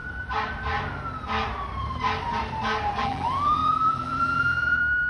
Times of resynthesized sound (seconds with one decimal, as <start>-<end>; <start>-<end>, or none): 3.0-5.1

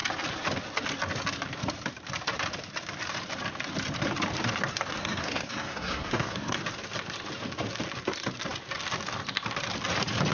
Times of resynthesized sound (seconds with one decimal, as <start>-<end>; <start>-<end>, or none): 5.0-6.6